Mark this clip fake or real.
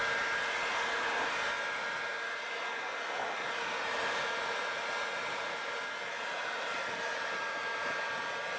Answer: real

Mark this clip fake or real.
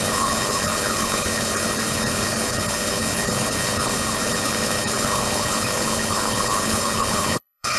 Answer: fake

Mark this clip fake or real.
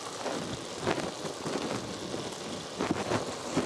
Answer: real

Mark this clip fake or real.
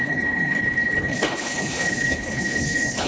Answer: fake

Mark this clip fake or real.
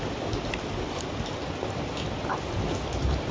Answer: real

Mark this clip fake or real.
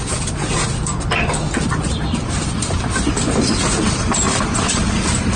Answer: real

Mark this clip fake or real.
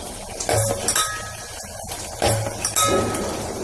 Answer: real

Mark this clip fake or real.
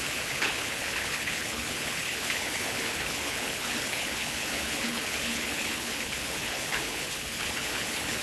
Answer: fake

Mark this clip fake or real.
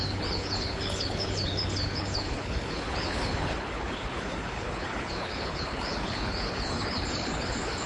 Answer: fake